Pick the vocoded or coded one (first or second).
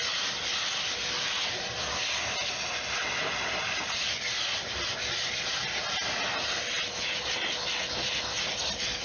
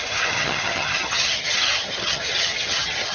second